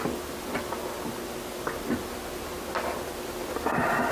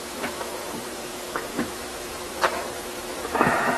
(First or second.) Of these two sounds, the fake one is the second